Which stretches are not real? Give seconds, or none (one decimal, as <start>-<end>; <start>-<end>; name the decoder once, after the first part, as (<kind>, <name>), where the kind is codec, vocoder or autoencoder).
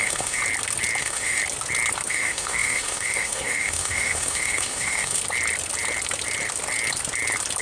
0.0-0.4 (autoencoder, DAC-VAE); 1.0-1.4; 2.1-5.2